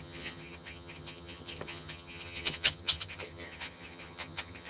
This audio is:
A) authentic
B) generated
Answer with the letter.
B